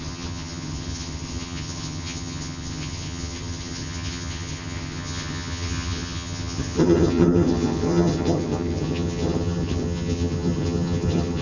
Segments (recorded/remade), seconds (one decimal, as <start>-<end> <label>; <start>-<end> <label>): 0.0-11.4 remade

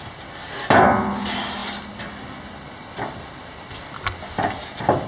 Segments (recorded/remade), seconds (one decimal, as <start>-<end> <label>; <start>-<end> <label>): 0.0-5.1 recorded

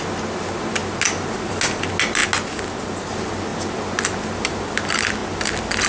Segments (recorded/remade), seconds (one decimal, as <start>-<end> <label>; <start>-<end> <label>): 0.0-5.9 recorded

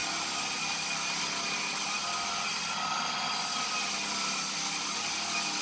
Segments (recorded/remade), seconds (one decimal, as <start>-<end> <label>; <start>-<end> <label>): 0.0-5.6 recorded

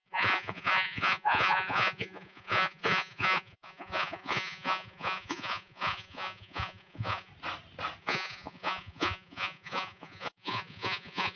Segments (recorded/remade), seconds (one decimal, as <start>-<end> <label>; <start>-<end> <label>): 0.0-7.3 remade; 7.3-8.0 recorded; 8.0-11.4 remade

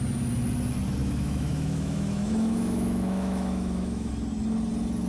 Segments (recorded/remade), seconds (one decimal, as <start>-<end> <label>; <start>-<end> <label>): 0.0-1.0 recorded; 1.0-4.1 remade; 4.1-5.1 recorded

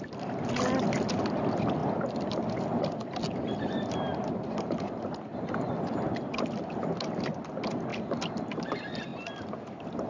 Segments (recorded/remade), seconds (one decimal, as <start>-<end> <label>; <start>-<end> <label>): 0.0-10.1 recorded

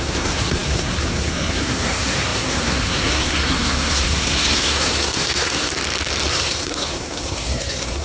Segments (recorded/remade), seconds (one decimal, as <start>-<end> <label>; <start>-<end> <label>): 0.0-5.7 remade; 5.7-6.3 recorded; 6.3-8.0 remade